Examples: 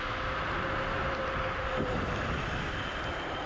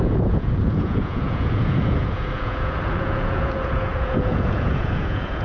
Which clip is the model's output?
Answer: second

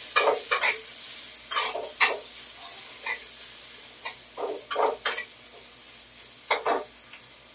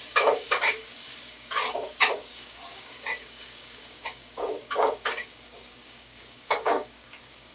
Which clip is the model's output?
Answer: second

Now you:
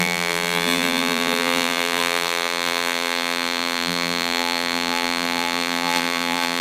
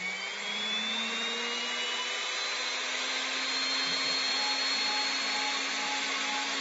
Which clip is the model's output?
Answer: first